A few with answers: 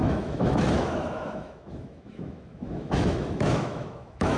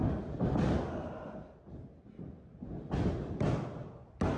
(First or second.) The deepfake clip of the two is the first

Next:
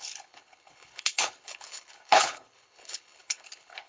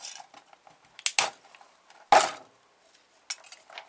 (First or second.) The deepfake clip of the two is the first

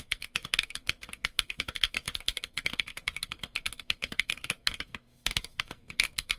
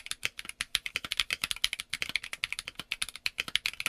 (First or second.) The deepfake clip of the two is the first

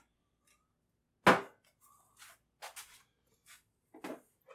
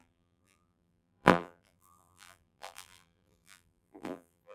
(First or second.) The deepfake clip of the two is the second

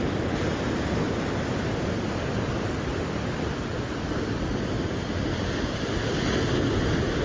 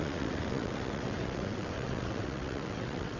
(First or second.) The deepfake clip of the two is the second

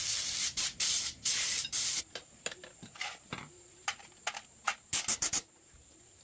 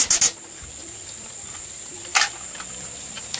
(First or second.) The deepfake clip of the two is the first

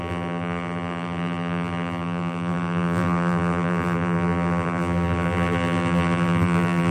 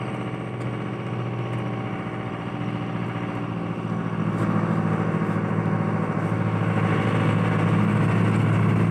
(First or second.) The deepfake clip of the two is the first